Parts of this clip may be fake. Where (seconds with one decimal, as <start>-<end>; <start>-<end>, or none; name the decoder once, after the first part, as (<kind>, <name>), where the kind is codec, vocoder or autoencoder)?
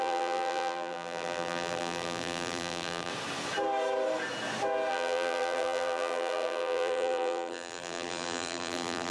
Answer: 0.0-3.1 (vocoder, BigVGAN v2); 4.9-9.1